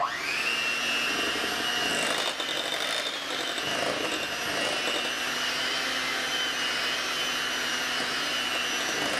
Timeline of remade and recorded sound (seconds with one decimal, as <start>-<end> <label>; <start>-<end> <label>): 0.0-9.2 recorded